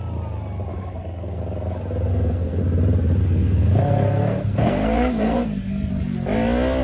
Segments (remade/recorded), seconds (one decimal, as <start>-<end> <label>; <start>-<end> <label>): 0.0-0.7 recorded; 0.7-1.4 remade; 1.4-2.1 recorded; 2.1-2.6 remade; 2.6-3.2 recorded; 3.2-5.9 remade; 5.9-6.8 recorded